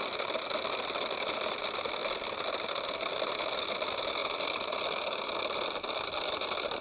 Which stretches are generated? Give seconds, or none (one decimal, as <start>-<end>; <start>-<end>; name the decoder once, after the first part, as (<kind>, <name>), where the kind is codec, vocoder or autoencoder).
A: none